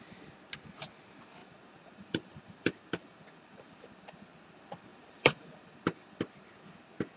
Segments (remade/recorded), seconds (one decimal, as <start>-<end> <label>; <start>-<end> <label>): 0.0-1.4 recorded; 1.4-4.2 remade; 4.2-4.9 recorded; 4.9-6.2 remade; 6.2-7.2 recorded